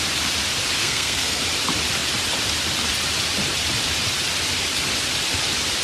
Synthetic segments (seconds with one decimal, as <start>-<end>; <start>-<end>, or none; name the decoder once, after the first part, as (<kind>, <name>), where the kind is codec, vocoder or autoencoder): 0.8-1.4 (codec, SNAC)